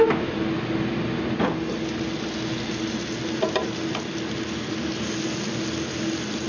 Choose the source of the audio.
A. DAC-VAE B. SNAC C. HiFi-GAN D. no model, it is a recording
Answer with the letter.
D